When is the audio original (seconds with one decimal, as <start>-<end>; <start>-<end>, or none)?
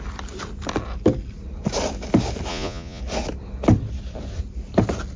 0.0-2.5; 3.0-5.2